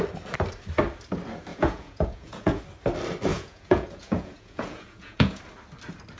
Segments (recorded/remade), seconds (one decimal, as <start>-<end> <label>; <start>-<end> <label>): 0.0-1.5 recorded; 1.5-2.6 remade; 2.6-3.3 recorded; 3.3-5.4 remade; 5.4-6.2 recorded

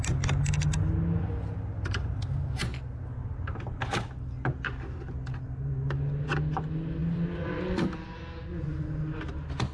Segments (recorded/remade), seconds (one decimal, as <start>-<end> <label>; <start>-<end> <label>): 0.0-9.7 recorded

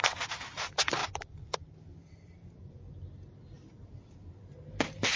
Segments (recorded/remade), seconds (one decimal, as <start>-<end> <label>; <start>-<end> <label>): 0.0-5.2 recorded

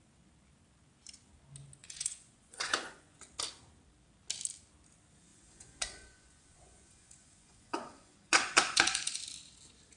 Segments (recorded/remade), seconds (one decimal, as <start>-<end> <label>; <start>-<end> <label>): 0.0-1.8 recorded; 1.8-3.2 remade; 3.2-5.3 recorded; 5.3-9.2 remade; 9.2-10.0 recorded

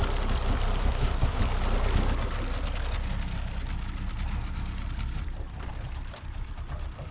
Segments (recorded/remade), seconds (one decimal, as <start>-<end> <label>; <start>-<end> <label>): 0.0-0.8 recorded; 0.8-1.4 remade; 1.4-7.1 recorded

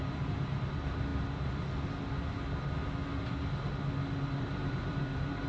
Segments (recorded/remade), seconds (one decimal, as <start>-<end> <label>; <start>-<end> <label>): 0.0-1.1 remade; 1.1-4.4 recorded; 4.4-5.5 remade

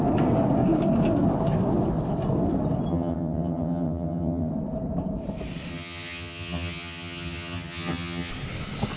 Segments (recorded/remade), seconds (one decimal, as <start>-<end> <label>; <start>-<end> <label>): 0.0-2.9 recorded; 2.9-4.5 remade; 4.5-5.7 recorded; 5.7-8.3 remade; 8.3-9.0 recorded